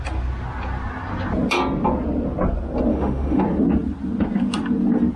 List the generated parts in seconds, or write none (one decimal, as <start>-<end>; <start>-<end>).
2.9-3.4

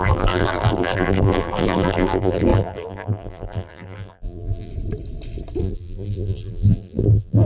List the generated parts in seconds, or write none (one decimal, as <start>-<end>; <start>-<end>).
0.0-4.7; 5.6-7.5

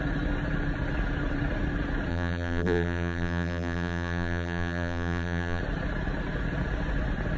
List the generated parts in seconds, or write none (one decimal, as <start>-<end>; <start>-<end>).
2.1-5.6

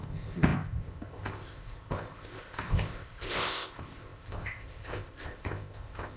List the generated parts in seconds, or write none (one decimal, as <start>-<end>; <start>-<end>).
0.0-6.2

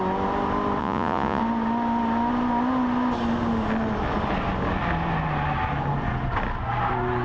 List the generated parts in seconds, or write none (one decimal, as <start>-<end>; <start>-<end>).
0.8-1.4